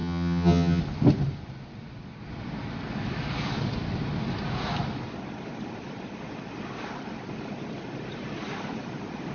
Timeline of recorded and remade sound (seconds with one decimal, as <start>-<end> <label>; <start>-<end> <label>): 0.0-0.8 remade; 0.8-9.3 recorded